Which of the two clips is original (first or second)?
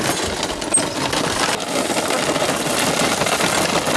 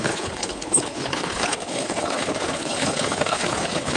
first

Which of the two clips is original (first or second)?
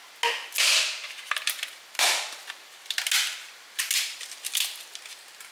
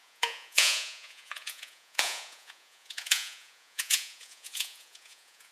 first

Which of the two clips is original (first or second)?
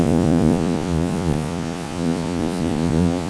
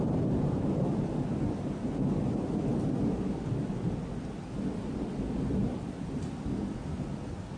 second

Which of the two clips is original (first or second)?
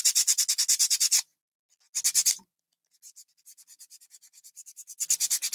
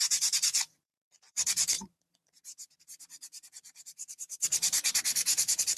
first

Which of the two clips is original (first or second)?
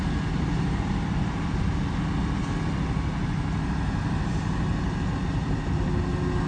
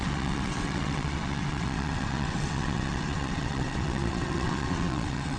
first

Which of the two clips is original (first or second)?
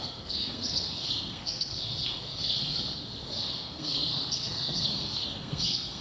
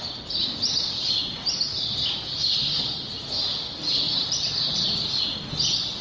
second